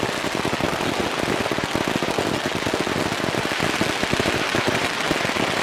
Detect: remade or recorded recorded